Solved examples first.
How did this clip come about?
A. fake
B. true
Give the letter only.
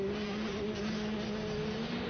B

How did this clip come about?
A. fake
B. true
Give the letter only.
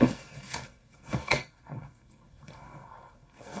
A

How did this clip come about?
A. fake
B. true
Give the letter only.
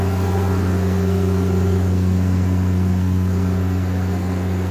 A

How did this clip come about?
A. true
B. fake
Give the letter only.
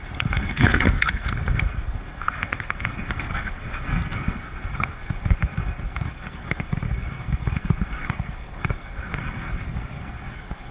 B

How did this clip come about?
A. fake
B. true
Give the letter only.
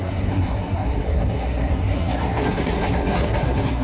A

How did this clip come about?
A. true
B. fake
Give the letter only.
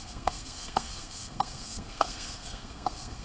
B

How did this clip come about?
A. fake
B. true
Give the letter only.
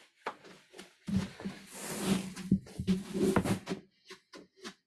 B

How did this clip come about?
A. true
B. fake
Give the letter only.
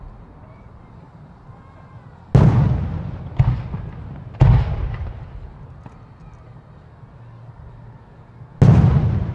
A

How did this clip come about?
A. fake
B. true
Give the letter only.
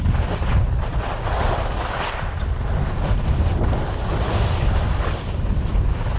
B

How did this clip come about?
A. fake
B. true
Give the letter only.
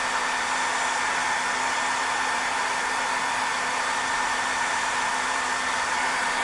B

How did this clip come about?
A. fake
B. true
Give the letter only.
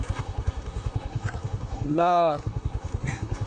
A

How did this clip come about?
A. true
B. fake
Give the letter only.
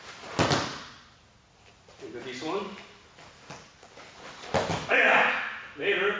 A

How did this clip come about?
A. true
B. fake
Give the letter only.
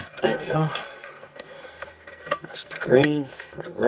B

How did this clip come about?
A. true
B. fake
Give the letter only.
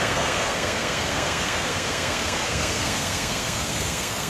B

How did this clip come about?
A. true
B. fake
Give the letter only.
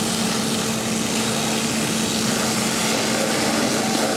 A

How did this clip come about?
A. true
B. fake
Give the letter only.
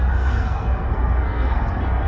B